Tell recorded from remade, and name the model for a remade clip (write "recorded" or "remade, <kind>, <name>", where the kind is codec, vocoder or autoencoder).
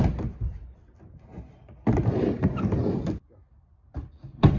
recorded